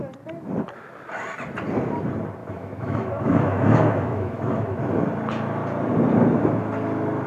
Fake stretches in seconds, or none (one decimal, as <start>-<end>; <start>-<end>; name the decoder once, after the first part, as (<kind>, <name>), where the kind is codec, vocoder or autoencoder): 2.4-4.8 (autoencoder, DAC-VAE)

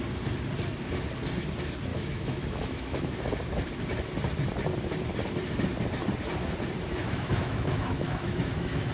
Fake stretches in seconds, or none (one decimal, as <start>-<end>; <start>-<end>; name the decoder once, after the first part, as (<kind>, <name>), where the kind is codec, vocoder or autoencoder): 1.9-3.3 (autoencoder, DAC-VAE); 7.0-8.9